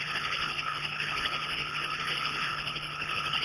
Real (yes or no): no